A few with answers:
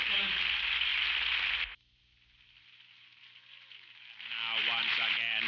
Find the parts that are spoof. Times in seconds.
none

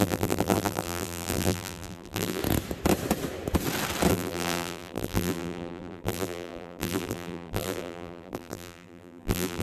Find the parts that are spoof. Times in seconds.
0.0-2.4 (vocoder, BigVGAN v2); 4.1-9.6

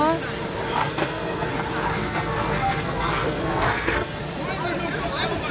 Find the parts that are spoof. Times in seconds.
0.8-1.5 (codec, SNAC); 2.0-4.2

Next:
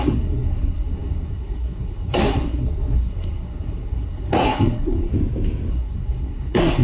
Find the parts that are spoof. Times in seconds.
0.0-5.1 (codec, SNAC); 5.7-6.8